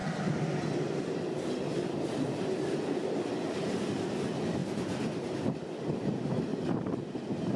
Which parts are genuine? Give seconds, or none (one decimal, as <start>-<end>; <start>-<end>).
0.0-4.6; 5.4-6.5